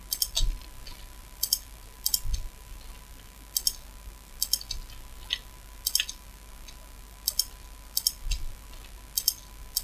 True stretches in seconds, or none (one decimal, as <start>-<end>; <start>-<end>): 0.0-0.9; 1.9-9.8